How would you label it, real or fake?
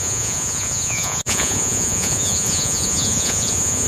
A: fake